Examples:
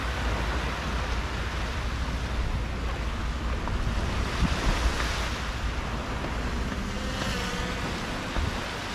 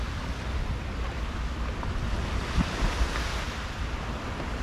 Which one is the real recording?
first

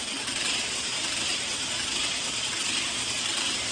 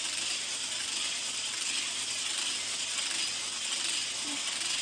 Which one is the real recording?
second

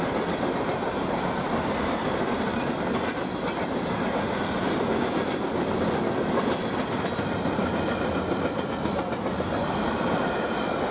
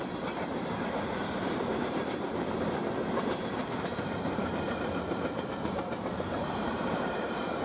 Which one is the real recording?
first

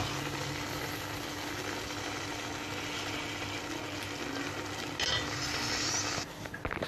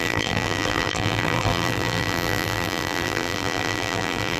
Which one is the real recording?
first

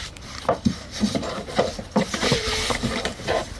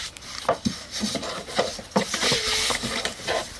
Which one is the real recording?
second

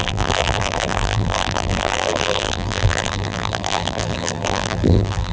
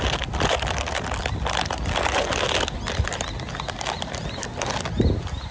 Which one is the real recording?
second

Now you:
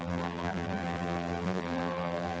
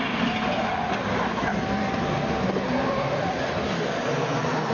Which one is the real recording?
second